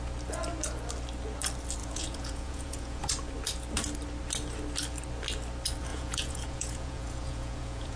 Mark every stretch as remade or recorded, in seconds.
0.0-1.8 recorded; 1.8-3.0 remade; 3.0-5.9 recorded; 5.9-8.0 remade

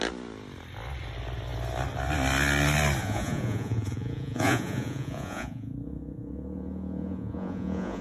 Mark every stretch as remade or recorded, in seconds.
0.0-3.0 recorded; 3.0-8.0 remade

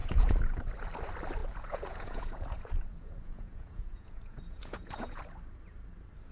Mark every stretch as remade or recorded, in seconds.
0.0-0.7 remade; 0.7-1.4 recorded; 1.4-5.2 remade; 5.2-6.3 recorded

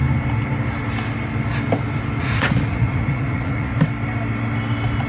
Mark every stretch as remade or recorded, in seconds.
0.0-2.2 recorded; 2.2-3.7 remade; 3.7-5.1 recorded

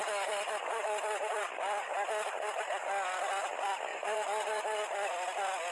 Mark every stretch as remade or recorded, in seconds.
0.0-3.9 recorded; 3.9-4.6 remade; 4.6-5.7 recorded